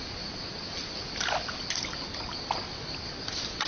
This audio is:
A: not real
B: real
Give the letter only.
B